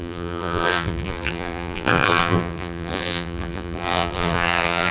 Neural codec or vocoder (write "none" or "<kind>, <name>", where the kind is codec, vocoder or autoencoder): vocoder, BigVGAN v2